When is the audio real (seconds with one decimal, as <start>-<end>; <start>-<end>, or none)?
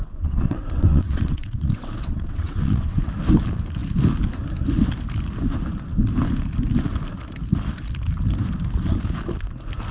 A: 3.1-9.9